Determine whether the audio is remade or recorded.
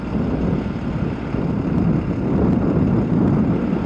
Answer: recorded